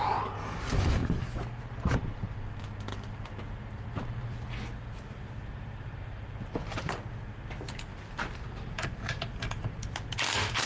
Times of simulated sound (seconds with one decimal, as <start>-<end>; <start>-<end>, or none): 2.9-6.9; 7.9-10.1